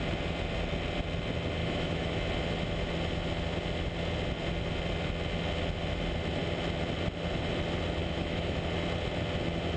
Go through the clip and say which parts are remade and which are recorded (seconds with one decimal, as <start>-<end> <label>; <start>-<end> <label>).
0.0-1.6 recorded; 1.6-2.3 remade; 2.3-8.0 recorded; 8.0-8.6 remade; 8.6-9.8 recorded